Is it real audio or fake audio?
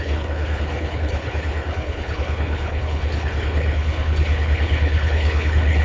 fake